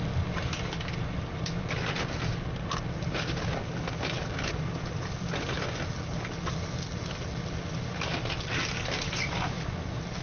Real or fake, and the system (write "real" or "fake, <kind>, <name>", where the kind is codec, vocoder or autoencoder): real